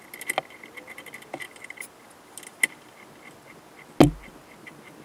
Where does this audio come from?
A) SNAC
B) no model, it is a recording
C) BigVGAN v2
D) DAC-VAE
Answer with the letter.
B